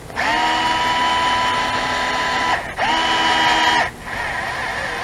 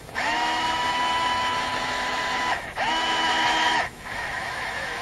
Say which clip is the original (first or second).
first